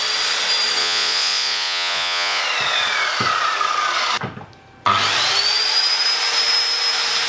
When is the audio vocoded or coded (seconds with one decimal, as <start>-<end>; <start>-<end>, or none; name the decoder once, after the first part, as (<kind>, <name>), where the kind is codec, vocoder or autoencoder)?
0.8-2.4 (vocoder, Vocos)

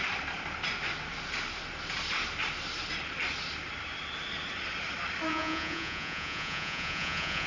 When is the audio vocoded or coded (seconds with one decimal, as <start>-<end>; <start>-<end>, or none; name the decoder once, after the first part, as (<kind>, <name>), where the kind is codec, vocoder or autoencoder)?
5.3-7.5 (vocoder, Vocos)

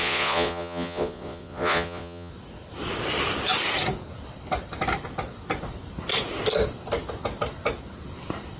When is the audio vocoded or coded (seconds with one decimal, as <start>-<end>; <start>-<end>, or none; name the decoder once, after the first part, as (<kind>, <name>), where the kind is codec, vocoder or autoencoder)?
0.0-2.3 (vocoder, Vocos)

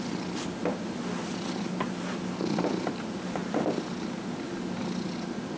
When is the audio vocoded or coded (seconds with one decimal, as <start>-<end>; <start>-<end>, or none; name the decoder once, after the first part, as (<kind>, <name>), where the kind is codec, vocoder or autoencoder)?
none

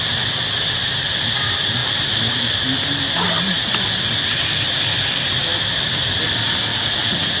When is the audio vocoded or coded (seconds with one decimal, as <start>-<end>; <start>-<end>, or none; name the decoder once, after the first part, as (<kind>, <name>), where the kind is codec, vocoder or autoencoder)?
6.7-7.4 (vocoder, Vocos)